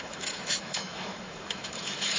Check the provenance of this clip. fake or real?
fake